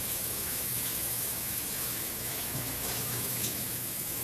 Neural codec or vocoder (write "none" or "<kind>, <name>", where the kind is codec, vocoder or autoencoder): autoencoder, DAC-VAE